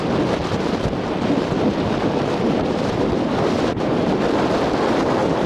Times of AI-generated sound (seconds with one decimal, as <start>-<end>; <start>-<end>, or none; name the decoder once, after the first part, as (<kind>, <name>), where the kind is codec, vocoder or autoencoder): 0.4-3.7 (vocoder, BigVGAN v2)